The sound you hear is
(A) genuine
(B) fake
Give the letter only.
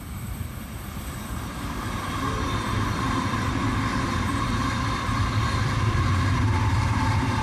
B